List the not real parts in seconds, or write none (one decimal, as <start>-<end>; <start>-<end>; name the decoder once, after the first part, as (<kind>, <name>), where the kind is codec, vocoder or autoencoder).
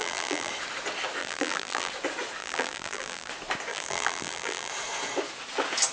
0.0-0.5 (vocoder, BigVGAN v2); 1.2-1.9; 2.4-3.3; 3.7-4.7